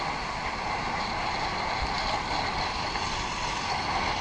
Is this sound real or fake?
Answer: real